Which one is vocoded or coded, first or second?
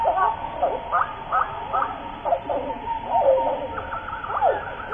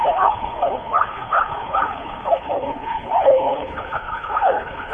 second